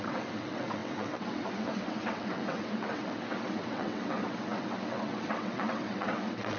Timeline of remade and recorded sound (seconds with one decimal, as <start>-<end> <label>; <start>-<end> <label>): 0.0-6.6 remade